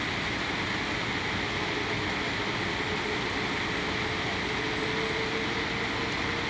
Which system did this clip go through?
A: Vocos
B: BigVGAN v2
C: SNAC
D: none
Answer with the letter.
D